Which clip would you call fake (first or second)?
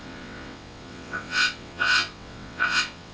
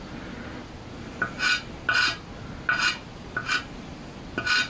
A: first